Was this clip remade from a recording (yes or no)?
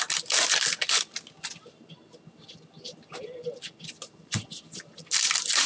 no